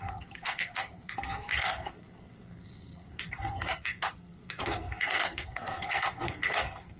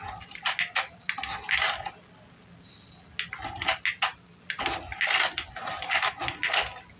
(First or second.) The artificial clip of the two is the first